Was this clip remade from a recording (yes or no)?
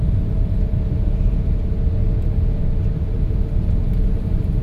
yes